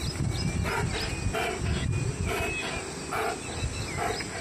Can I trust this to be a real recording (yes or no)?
yes